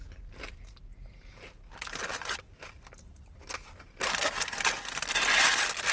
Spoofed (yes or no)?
no